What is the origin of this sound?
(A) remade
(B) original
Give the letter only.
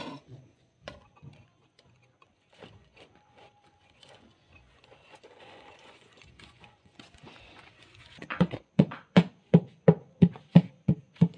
A